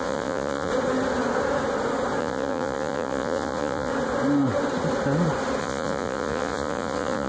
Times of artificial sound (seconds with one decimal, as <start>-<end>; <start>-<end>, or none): 0.0-0.7; 2.2-3.9; 5.6-7.3